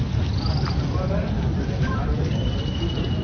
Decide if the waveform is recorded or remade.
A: recorded